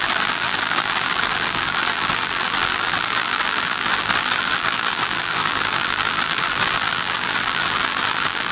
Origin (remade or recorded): remade